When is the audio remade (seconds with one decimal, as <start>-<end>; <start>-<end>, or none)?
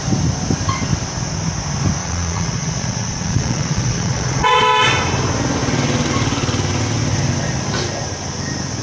2.0-4.6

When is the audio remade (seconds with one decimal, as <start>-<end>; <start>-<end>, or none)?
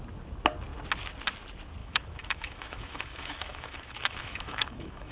1.8-5.1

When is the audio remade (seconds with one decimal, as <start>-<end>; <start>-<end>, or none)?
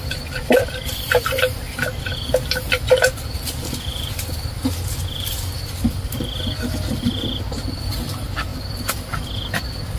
8.5-9.2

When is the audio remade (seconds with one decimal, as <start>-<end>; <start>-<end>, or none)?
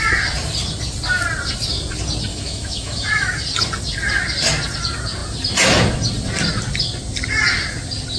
2.3-3.4